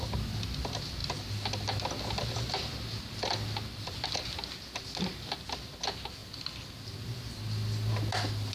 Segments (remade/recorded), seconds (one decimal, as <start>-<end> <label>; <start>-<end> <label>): 0.0-8.5 recorded